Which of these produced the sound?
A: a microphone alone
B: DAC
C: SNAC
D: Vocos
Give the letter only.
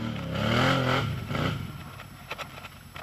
A